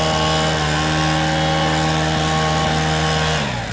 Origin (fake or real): real